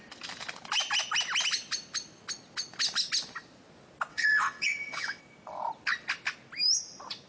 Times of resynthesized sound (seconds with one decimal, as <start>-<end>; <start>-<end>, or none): 4.1-5.2